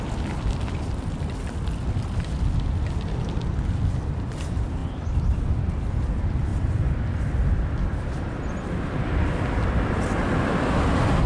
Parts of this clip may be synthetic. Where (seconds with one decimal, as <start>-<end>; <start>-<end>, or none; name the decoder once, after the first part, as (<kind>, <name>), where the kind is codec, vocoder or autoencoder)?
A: 6.5-7.5 (vocoder, BigVGAN v2)